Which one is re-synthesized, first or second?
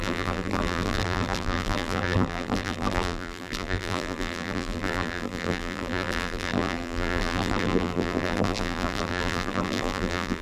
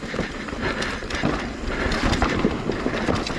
first